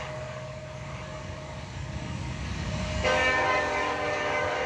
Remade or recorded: remade